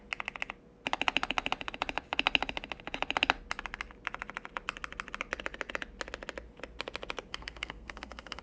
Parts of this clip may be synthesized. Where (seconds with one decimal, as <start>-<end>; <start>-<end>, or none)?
7.3-8.4

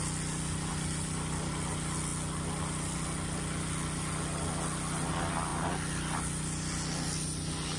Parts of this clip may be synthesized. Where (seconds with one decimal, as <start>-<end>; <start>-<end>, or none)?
none